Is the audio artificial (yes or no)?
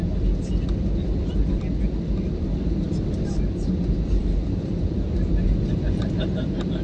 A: no